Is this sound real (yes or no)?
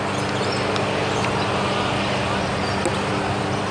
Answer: yes